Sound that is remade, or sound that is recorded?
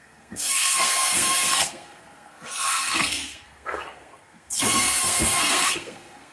remade